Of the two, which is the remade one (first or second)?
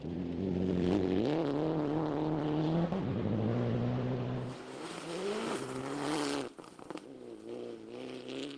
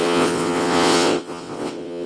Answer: second